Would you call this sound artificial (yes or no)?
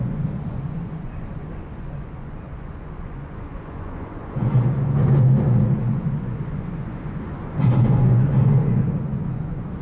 yes